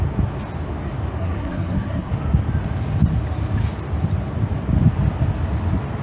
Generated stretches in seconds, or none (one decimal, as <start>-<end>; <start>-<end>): 1.2-2.1